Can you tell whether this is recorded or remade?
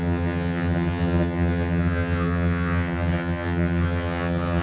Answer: remade